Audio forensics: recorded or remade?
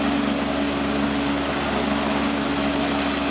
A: recorded